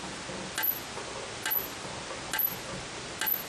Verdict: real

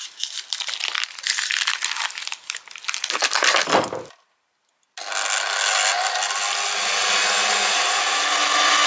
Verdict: real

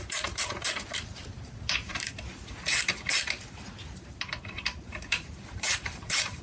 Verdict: fake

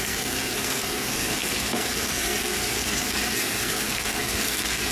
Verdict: fake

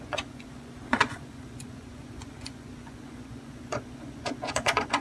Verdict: fake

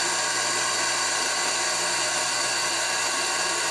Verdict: real